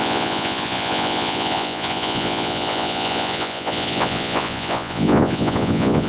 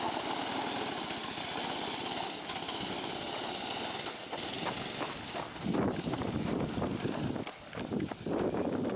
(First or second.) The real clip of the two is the second